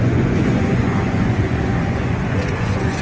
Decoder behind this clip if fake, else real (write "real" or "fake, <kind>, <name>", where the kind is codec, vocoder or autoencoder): fake, vocoder, Vocos